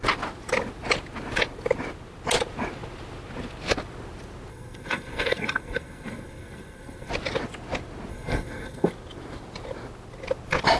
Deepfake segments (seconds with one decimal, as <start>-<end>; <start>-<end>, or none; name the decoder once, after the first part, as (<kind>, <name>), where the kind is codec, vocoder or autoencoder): 4.5-7.1 (codec, SNAC); 8.1-8.9